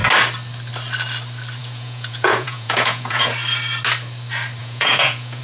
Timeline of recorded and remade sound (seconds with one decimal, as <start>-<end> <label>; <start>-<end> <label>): 0.0-1.6 recorded; 1.6-3.3 remade; 3.3-4.6 recorded; 4.6-5.4 remade